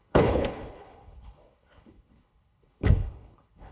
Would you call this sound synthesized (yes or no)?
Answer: yes